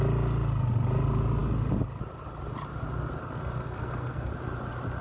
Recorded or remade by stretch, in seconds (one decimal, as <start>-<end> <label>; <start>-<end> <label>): 0.0-3.2 recorded; 3.2-4.3 remade; 4.3-5.0 recorded